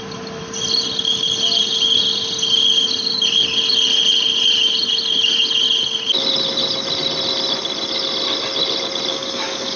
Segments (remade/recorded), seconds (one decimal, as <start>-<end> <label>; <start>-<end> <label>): 0.0-9.1 recorded; 9.1-9.8 remade